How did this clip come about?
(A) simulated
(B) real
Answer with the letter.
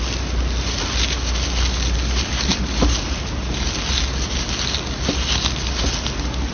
B